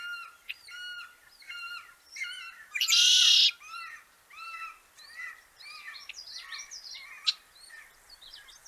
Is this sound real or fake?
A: real